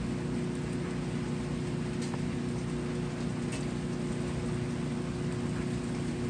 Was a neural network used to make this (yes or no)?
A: no